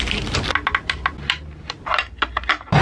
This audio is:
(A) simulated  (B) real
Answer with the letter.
B